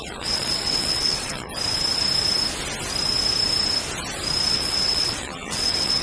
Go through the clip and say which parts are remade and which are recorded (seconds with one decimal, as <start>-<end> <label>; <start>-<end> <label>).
0.0-1.5 remade; 1.5-4.5 recorded; 4.5-6.0 remade